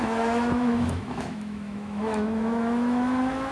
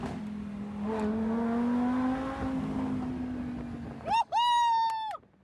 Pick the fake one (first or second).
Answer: first